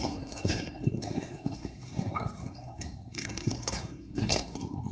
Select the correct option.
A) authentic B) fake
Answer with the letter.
B